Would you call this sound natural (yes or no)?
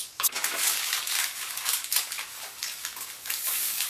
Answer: no